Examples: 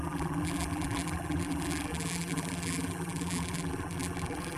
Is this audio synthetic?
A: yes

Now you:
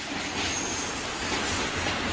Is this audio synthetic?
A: no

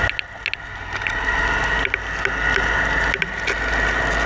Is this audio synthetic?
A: no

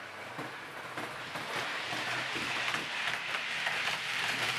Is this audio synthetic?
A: yes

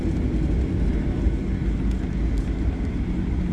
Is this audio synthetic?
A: no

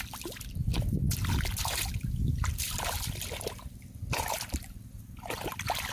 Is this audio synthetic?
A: no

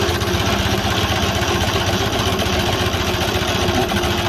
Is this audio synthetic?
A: no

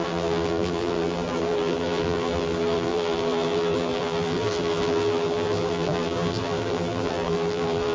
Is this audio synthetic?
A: yes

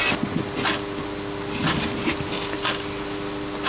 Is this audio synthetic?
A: no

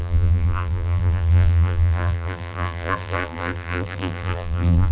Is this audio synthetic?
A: yes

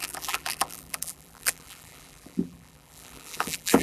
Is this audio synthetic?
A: yes